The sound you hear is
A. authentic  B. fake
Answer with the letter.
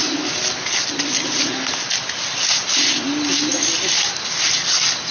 A